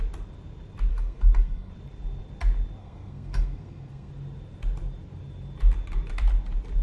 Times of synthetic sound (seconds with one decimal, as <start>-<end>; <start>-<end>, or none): 0.9-1.7; 2.8-4.1